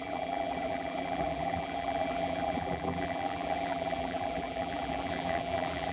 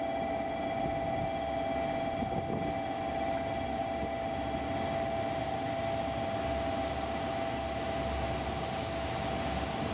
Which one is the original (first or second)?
second